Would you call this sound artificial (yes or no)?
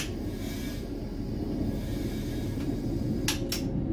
no